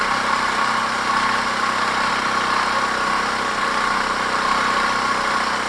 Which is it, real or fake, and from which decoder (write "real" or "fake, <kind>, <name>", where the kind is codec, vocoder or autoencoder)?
real